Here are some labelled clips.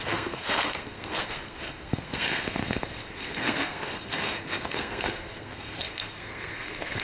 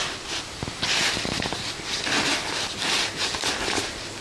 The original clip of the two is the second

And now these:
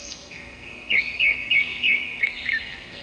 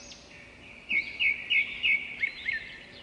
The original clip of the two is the second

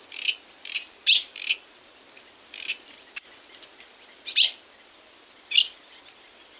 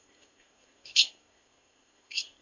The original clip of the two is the first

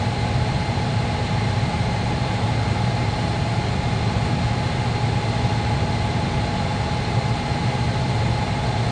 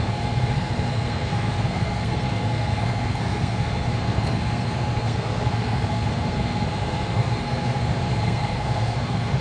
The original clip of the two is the first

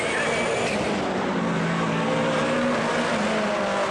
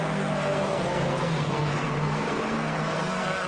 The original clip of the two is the first